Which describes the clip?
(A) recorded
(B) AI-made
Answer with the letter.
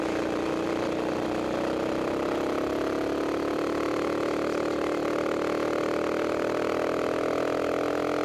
A